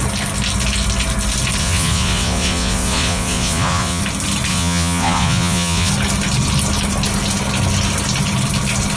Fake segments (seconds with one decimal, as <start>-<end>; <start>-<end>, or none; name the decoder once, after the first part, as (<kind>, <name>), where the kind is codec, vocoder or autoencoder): 1.6-4.0 (vocoder, Vocos); 4.5-5.9